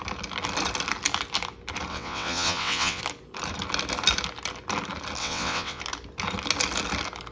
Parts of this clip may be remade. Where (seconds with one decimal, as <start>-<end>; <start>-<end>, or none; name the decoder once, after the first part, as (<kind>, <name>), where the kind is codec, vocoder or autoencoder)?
1.9-3.0 (vocoder, WaveNeXt); 5.2-5.8